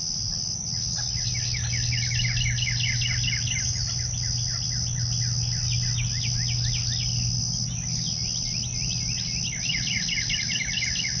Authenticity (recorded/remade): recorded